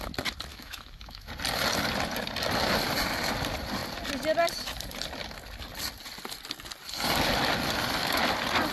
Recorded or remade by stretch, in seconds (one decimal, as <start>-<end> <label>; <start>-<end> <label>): 0.0-0.5 recorded; 0.5-1.3 remade; 1.3-8.7 recorded